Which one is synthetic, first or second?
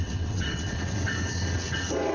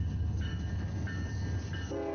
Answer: first